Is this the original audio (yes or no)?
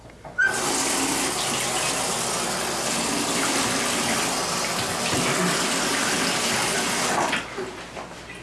yes